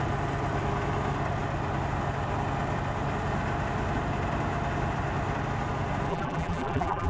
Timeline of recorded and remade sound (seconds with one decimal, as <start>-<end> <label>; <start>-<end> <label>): 0.0-6.1 recorded; 6.1-7.1 remade